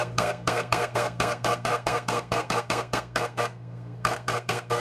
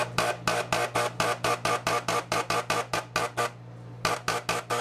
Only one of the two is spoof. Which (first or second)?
first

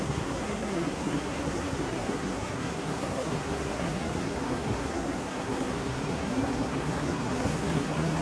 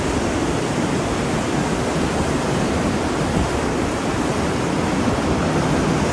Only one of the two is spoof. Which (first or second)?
first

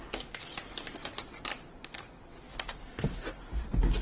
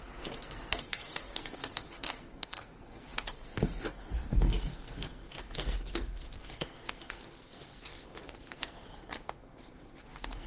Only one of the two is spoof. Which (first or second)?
second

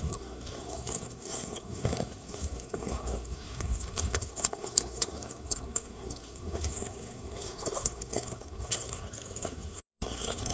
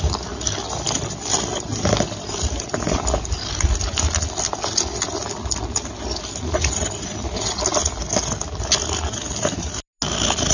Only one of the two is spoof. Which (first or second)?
first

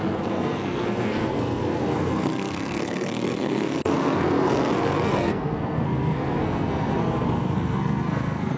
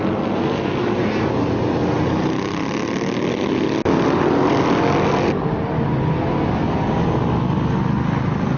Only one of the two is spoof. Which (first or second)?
first